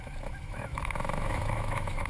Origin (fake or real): fake